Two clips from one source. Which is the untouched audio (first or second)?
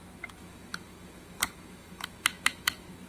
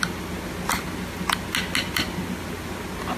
second